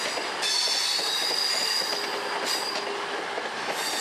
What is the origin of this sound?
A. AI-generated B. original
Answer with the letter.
B